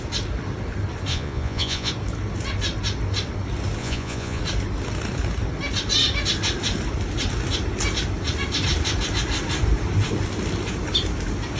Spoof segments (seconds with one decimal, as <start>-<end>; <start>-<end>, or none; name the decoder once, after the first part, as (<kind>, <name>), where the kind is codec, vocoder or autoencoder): 1.1-1.9 (vocoder, Vocos); 3.8-4.4

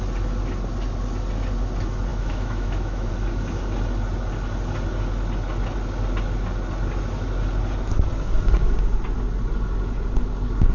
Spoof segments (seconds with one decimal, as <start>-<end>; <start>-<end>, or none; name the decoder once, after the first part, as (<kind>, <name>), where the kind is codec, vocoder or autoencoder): 2.1-3.1 (autoencoder, DAC-VAE)

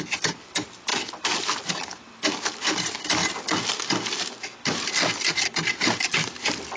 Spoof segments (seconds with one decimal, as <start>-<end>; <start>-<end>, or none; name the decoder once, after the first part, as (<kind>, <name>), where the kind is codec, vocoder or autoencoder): none

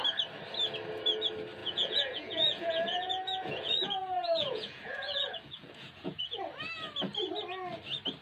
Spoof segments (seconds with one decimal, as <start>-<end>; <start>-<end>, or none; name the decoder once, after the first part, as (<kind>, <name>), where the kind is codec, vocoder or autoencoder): 1.6-6.4 (vocoder, Vocos)

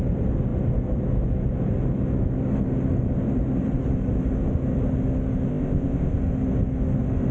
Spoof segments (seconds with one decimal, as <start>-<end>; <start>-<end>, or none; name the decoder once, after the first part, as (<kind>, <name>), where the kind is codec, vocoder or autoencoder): 5.5-6.2 (codec, ZipCodec)

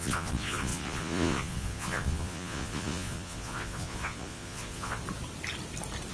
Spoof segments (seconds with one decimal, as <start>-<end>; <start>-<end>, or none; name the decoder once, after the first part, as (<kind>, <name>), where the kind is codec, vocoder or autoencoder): 0.0-5.0 (vocoder, Vocos)

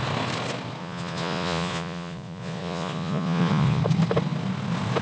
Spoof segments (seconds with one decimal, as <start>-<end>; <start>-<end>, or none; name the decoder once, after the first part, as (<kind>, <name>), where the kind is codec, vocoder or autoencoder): 0.8-3.8 (vocoder, Vocos)